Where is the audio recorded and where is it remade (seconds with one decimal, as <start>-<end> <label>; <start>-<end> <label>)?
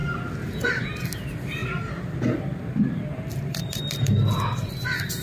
0.0-5.2 recorded